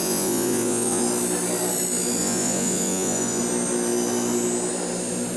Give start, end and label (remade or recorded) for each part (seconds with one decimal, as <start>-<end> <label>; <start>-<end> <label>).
0.0-1.0 remade; 1.0-2.2 recorded; 2.2-3.4 remade; 3.4-5.4 recorded